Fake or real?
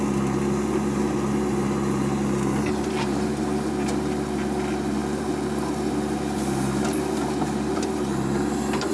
real